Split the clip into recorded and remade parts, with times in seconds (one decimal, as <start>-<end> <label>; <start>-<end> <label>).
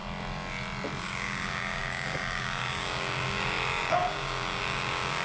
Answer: 0.0-1.0 recorded; 1.0-5.2 remade